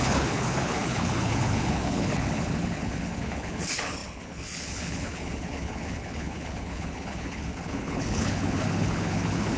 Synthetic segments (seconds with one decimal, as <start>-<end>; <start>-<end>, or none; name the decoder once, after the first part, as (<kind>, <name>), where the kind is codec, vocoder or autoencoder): 0.0-9.6 (codec, HILCodec)